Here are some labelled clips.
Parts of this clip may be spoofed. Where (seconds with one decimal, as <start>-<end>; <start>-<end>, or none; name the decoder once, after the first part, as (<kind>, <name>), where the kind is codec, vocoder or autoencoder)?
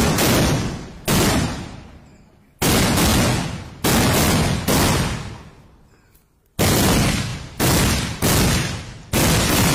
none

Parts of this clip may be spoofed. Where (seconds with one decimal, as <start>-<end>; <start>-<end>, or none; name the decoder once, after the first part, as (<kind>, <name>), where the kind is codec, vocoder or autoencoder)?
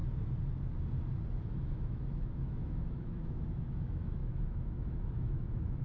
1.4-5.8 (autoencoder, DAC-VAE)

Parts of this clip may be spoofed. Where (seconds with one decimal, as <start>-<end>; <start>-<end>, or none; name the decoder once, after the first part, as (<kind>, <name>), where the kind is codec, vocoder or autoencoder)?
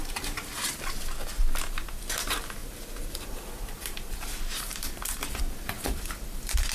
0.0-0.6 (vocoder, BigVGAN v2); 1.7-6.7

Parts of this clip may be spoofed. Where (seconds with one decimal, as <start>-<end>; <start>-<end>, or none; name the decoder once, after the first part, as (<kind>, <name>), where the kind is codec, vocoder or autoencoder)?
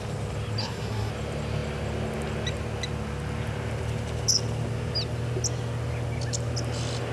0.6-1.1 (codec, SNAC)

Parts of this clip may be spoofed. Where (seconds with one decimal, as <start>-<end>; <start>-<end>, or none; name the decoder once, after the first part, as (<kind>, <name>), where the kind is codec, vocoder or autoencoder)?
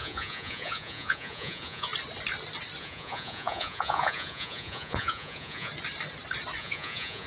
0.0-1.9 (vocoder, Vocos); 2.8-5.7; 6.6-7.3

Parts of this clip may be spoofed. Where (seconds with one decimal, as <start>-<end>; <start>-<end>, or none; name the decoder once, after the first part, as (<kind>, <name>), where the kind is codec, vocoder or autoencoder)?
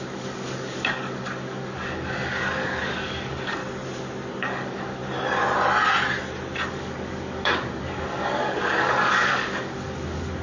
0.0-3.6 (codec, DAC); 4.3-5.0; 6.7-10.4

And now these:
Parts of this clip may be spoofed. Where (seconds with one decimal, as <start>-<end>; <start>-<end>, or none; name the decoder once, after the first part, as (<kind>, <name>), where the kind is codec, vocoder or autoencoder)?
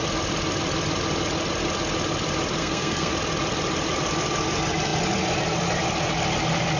2.6-3.1 (codec, SNAC)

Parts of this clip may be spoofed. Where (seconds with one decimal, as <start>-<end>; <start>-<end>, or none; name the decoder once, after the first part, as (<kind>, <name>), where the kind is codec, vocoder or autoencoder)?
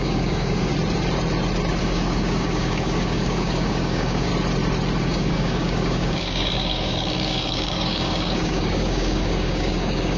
0.0-0.7 (codec, DAC); 1.8-4.3; 5.0-10.2